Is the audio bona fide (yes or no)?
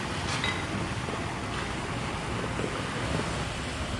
yes